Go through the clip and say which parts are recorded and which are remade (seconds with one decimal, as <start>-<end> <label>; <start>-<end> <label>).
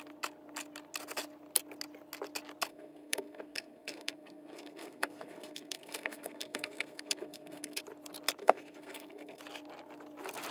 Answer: 0.0-2.7 recorded; 2.7-7.8 remade; 7.8-8.4 recorded; 8.4-9.4 remade; 9.4-10.5 recorded